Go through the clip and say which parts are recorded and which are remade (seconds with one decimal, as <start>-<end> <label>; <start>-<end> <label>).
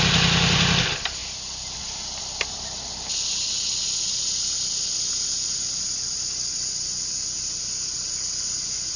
0.0-9.0 recorded